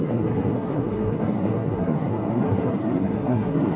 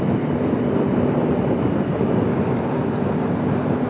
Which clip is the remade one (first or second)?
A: first